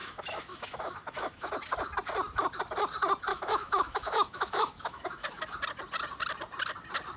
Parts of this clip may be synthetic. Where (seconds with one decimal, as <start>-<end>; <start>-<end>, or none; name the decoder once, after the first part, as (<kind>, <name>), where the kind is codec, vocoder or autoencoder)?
0.0-1.5 (autoencoder, DAC-VAE); 3.3-5.4

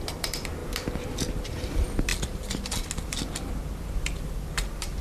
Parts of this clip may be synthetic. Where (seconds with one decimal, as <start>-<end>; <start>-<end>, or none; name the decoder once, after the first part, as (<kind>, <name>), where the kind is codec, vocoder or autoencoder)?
none

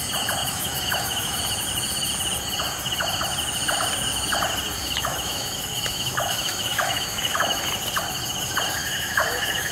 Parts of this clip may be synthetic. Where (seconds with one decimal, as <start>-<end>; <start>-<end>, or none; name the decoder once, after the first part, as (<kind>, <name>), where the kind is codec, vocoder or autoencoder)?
0.4-1.4 (autoencoder, DAC-VAE); 4.8-7.6; 8.8-9.7

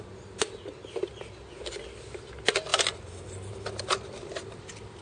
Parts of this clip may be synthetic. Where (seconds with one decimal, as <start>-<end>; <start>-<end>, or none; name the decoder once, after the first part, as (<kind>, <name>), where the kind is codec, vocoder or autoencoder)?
none